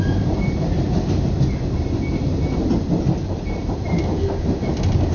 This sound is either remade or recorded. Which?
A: recorded